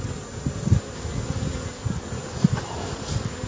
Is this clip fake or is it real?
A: real